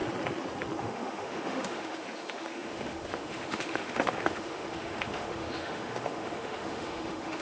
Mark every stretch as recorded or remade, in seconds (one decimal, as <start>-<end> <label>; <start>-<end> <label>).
0.0-0.8 recorded; 0.8-7.4 remade